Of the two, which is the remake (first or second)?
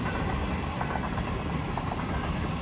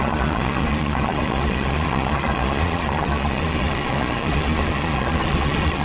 second